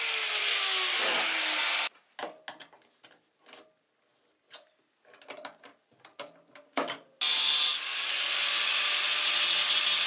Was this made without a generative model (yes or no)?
yes